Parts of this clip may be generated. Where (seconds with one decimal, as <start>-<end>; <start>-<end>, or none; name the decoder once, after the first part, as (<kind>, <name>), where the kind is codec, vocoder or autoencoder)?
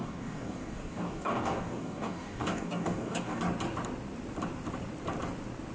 0.0-3.4 (codec, DAC)